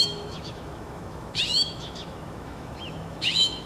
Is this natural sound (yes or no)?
no